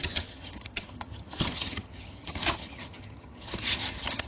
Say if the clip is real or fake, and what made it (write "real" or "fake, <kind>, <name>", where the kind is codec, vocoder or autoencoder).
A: fake, vocoder, HiFi-GAN